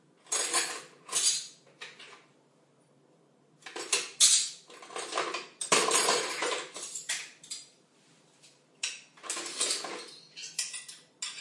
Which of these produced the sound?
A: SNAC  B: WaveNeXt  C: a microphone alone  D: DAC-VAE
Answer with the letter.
C